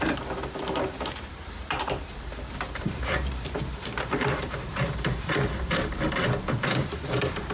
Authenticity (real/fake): fake